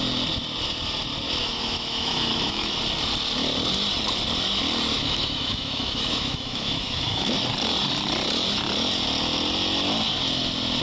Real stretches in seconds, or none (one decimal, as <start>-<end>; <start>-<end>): 0.0-1.4; 2.8-4.9; 7.3-10.8